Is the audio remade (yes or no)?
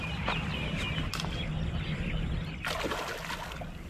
no